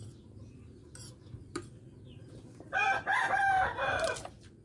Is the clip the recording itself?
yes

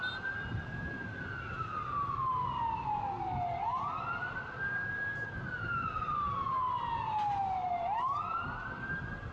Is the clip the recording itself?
yes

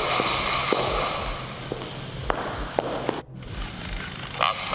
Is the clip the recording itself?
yes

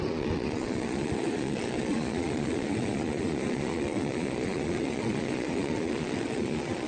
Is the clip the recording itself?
no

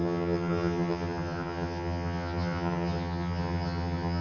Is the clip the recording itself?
no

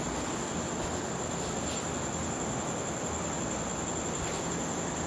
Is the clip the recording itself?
yes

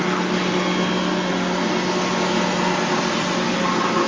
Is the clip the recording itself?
yes